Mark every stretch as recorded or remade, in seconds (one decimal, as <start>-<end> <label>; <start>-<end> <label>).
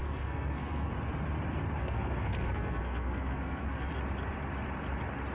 0.0-0.9 remade; 0.9-1.8 recorded; 1.8-3.9 remade; 3.9-5.3 recorded